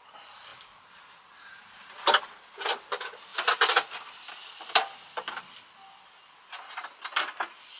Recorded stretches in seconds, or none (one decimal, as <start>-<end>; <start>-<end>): 0.0-3.3; 4.5-7.8